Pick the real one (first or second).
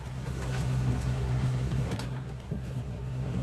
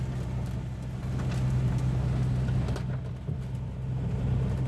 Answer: second